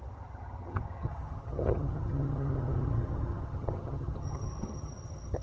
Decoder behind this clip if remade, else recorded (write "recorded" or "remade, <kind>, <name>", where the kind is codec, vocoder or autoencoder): remade, vocoder, HiFi-GAN